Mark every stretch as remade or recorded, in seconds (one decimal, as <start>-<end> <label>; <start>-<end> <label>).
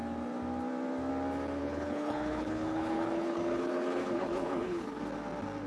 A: 0.0-1.6 recorded; 1.6-5.0 remade; 5.0-5.7 recorded